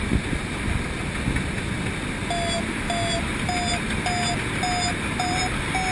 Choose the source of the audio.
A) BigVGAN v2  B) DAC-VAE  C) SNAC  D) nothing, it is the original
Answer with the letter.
D